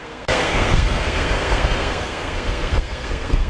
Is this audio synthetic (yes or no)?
yes